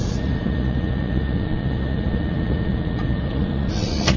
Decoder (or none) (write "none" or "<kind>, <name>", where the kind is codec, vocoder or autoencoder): vocoder, Vocos